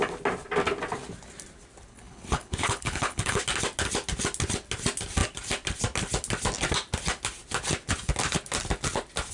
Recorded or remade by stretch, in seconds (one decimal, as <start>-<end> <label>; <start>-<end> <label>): 0.0-1.9 recorded; 1.9-3.4 remade; 3.4-9.3 recorded